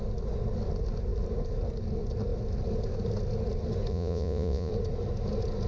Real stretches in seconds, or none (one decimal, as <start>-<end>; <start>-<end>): 0.0-3.9; 4.7-5.7